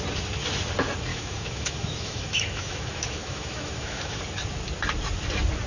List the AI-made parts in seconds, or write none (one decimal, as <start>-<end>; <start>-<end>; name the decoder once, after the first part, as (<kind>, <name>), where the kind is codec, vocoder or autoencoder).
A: 1.1-4.2 (autoencoder, DAC-VAE)